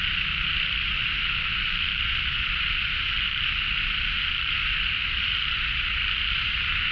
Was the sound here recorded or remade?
recorded